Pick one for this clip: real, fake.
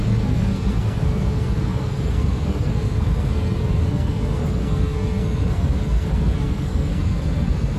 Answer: fake